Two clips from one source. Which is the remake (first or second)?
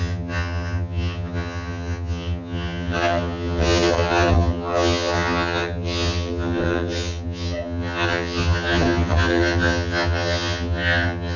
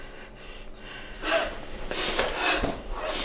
first